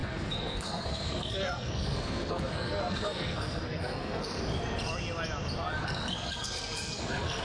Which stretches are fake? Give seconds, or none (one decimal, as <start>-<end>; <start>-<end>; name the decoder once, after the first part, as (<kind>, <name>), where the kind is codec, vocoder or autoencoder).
0.0-4.4 (codec, SNAC); 5.8-7.4